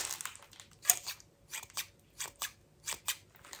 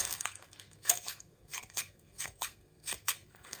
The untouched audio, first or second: first